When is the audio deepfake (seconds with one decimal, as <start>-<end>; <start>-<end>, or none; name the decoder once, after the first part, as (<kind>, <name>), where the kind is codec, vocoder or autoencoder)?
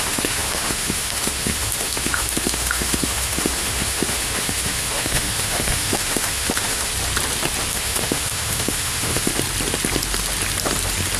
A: 0.0-6.9 (autoencoder, DAC-VAE); 7.7-9.3